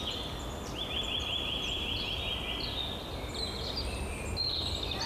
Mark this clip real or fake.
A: real